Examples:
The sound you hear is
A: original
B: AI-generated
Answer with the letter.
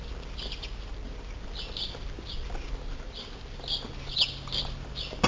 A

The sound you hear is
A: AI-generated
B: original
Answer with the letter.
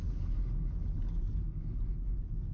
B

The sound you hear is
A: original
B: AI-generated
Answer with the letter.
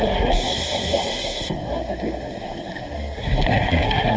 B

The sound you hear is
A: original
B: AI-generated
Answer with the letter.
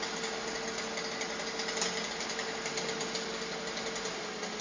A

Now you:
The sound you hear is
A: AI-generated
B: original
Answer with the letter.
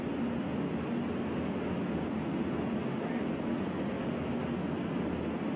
B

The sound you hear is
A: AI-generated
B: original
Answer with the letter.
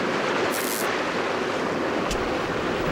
B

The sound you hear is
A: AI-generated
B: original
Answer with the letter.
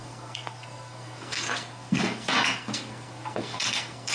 A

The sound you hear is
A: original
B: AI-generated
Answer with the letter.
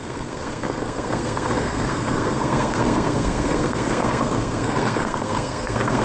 B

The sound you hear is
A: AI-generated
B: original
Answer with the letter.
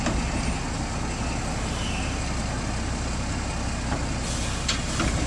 B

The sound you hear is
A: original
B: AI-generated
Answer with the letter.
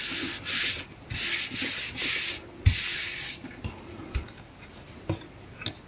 A